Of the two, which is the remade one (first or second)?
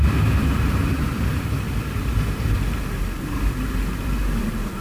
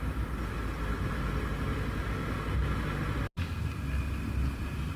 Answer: first